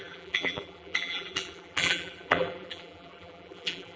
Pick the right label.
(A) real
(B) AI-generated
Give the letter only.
B